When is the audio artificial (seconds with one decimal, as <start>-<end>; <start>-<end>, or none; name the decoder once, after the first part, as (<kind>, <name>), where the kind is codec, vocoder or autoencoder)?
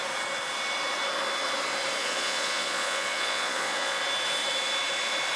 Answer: 2.0-4.0 (vocoder, Vocos)